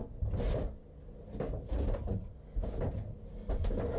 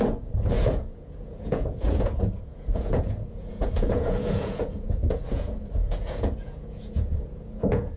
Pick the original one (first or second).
first